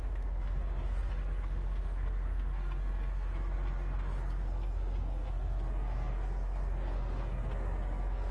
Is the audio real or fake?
fake